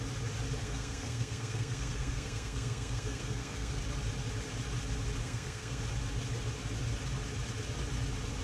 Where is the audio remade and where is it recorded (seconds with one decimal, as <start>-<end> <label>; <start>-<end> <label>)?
0.0-0.6 recorded; 0.6-3.8 remade; 3.8-5.2 recorded; 5.2-5.8 remade; 5.8-8.4 recorded